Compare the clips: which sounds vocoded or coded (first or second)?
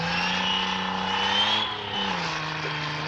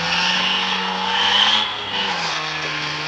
second